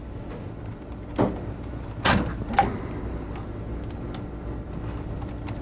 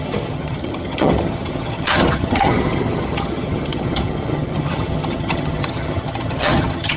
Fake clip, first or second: second